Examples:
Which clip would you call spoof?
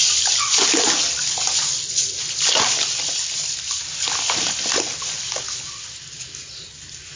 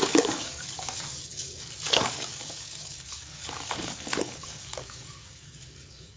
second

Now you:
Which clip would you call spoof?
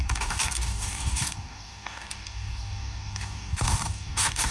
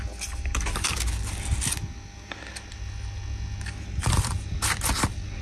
first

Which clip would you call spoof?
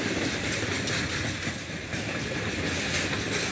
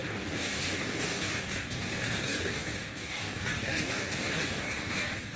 second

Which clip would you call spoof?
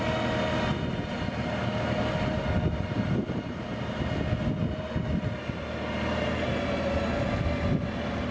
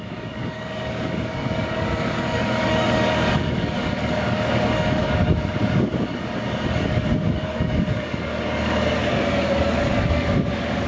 second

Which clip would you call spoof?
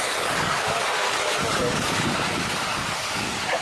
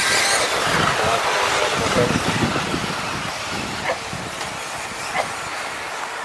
first